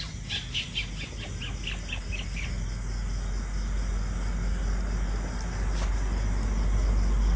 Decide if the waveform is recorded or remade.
recorded